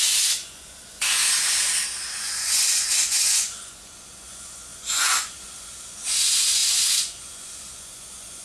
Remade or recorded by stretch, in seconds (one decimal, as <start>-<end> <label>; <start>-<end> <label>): 0.0-1.2 remade; 1.2-2.0 recorded; 2.0-8.4 remade